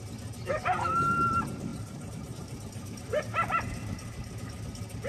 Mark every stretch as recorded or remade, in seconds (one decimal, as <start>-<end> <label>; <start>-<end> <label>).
0.0-1.7 recorded; 1.7-5.1 remade